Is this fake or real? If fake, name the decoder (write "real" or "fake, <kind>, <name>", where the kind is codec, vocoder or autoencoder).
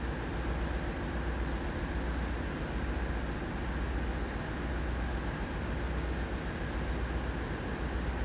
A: real